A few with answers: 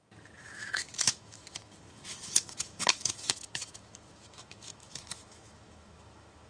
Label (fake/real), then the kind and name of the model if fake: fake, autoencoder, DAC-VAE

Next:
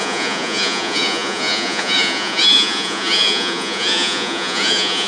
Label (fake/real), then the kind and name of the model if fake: fake, vocoder, Vocos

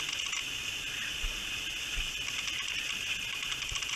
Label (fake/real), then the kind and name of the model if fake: real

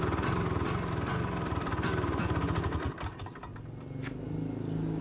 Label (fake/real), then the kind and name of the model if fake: real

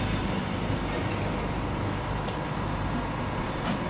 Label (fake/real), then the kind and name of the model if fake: real